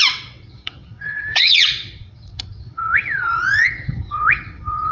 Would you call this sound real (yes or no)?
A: no